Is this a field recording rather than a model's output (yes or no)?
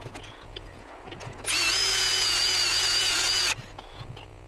no